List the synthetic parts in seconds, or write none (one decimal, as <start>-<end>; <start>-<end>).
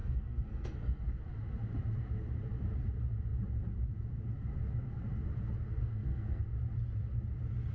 0.0-1.0; 5.8-6.4